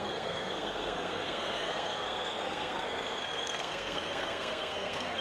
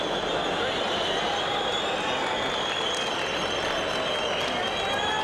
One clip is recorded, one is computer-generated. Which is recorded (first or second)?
second